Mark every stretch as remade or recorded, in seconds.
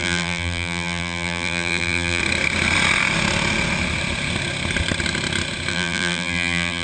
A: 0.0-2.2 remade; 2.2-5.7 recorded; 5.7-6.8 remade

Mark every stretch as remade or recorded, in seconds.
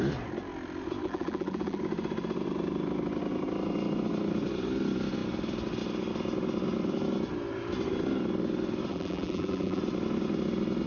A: 0.0-1.0 recorded; 1.0-1.8 remade; 1.8-8.9 recorded; 8.9-9.8 remade; 9.8-10.9 recorded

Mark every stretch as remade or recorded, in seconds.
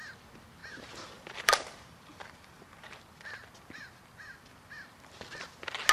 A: 0.0-0.6 recorded; 0.6-3.0 remade; 3.0-5.9 recorded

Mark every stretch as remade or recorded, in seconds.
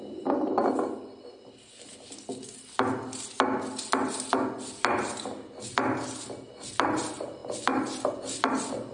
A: 0.0-8.9 recorded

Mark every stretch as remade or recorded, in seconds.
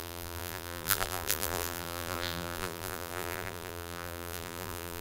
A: 0.0-5.0 remade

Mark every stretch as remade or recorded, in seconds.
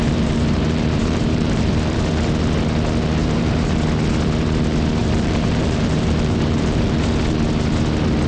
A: 0.0-2.1 remade; 2.1-3.2 recorded; 3.2-3.7 remade; 3.7-5.0 recorded; 5.0-7.1 remade; 7.1-8.3 recorded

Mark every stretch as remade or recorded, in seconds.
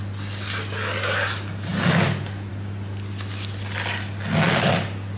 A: 0.0-5.2 recorded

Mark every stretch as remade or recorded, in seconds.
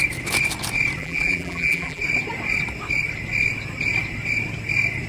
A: 0.0-1.0 recorded; 1.0-2.0 remade; 2.0-5.1 recorded